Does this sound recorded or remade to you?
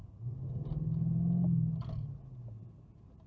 recorded